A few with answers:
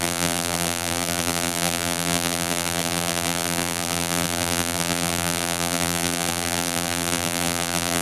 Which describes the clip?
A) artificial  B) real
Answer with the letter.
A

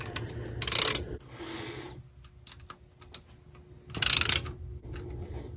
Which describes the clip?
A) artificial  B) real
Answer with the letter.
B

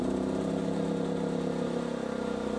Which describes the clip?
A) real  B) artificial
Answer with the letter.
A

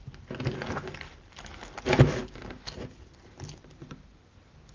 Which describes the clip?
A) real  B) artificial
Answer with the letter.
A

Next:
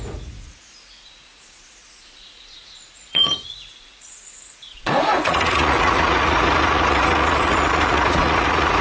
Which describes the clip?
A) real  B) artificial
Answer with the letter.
B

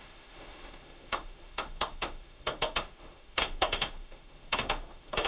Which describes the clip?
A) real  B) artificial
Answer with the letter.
B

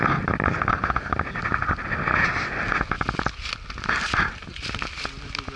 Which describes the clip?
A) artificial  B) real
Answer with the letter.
B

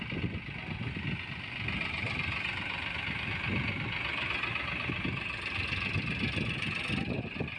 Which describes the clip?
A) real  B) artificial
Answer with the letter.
A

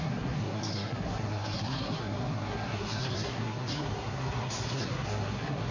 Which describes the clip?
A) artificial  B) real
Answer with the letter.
A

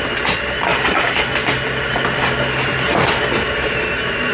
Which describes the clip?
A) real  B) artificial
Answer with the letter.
A